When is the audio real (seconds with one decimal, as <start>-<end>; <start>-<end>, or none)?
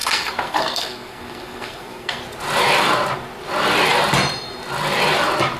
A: 2.2-5.6